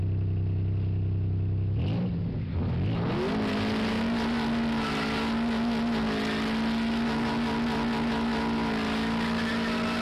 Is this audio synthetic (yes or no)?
no